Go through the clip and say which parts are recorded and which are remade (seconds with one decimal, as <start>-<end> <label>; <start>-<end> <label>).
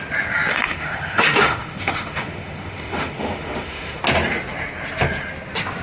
0.0-0.5 recorded; 0.5-4.0 remade; 4.0-5.8 recorded